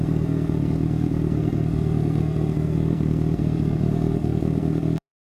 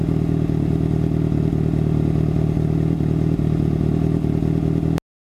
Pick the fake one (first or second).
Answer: first